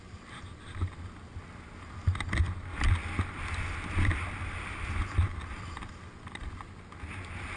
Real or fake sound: real